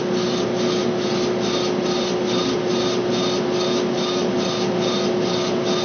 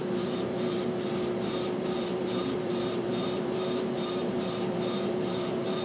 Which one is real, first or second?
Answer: first